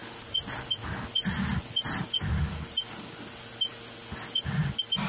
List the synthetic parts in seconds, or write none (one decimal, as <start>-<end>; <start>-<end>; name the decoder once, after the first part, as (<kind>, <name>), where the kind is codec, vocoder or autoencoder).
none